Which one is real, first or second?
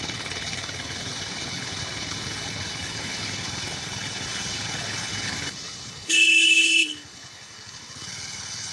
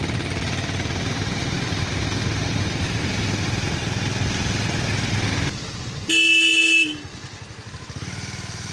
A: second